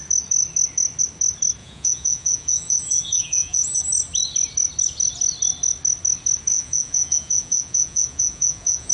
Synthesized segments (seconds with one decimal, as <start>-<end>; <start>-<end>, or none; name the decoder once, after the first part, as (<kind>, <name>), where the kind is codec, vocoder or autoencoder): 1.6-3.8 (vocoder, Vocos); 6.5-8.9